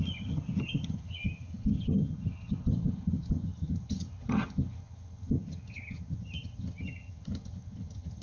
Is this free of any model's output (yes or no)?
no